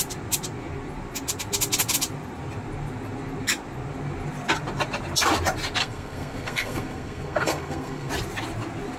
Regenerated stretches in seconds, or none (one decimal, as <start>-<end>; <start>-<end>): 5.8-8.1